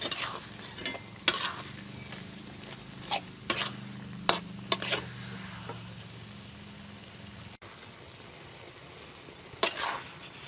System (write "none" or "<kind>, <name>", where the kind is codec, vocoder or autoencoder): none